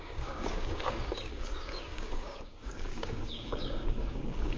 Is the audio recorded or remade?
remade